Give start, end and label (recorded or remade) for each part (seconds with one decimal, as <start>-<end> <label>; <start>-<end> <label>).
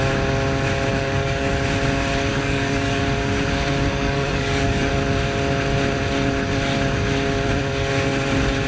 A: 0.0-0.9 recorded; 0.9-1.5 remade; 1.5-2.3 recorded; 2.3-3.0 remade; 3.0-3.9 recorded; 3.9-4.9 remade; 4.9-8.7 recorded